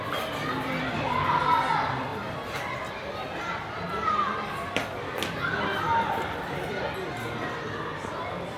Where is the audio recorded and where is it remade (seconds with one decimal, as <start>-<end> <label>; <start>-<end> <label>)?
0.0-8.6 recorded